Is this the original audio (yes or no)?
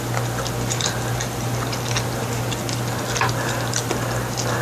yes